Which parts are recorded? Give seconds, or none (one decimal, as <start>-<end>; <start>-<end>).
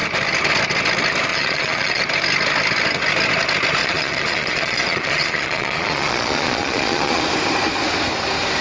0.0-1.3; 2.0-3.8; 7.2-8.6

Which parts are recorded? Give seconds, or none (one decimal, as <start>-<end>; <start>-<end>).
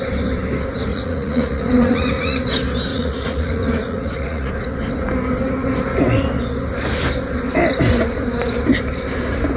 0.0-0.9; 2.4-2.9; 4.5-9.6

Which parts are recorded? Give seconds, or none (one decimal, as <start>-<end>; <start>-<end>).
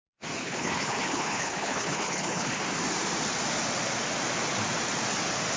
0.0-0.4; 2.6-5.6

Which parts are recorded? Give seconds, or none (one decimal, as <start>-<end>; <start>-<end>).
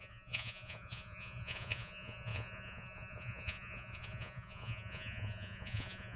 none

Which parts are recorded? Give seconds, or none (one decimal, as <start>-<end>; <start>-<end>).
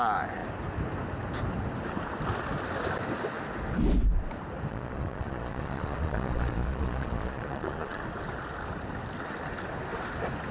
0.0-4.7; 8.0-10.5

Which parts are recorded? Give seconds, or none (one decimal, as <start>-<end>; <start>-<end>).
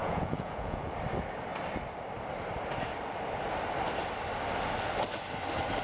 0.9-5.8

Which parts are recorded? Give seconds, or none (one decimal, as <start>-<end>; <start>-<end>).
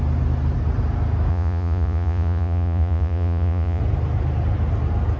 0.0-1.3; 3.8-5.2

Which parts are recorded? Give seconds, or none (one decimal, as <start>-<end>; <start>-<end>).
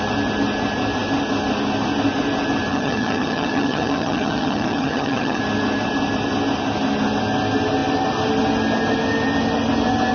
0.0-2.7; 5.4-10.1